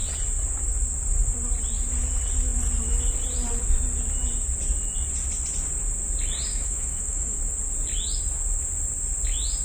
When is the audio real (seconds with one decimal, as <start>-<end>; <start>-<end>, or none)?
0.0-6.5; 7.4-9.6